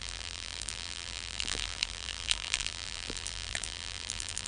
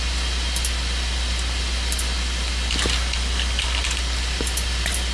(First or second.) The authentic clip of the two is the second